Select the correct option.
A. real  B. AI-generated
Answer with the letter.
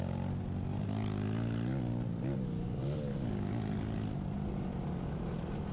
A